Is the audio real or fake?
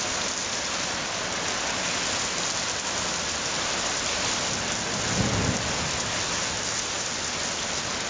real